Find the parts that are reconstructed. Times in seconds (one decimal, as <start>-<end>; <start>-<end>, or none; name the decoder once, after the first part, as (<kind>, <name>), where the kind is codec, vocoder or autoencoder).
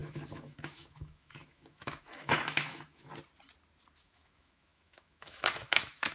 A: 0.0-3.1 (autoencoder, DAC-VAE); 4.0-6.1